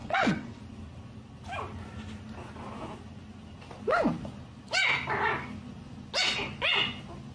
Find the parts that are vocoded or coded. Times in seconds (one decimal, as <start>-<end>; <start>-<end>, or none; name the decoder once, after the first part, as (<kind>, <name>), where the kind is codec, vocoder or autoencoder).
0.0-0.6 (vocoder, WaveNeXt)